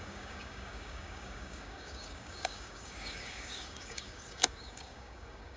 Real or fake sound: fake